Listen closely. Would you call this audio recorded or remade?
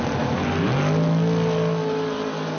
recorded